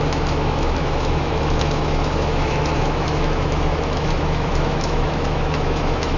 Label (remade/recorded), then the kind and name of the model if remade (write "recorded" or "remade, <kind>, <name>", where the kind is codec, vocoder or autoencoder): remade, autoencoder, DAC-VAE